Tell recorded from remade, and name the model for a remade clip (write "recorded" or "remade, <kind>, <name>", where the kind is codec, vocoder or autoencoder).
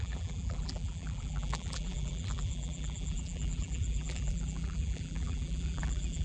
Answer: remade, vocoder, BigVGAN v2